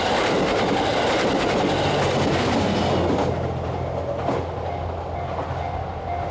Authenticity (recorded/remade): recorded